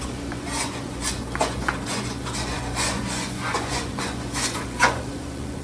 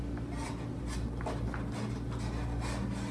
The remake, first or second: first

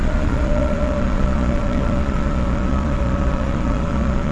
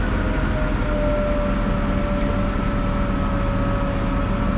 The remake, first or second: first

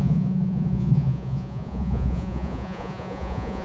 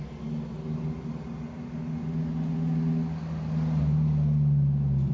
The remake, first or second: first